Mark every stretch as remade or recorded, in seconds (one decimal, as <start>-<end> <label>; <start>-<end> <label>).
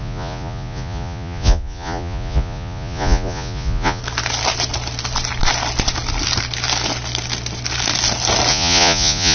0.0-4.0 remade; 4.0-8.5 recorded; 8.5-9.3 remade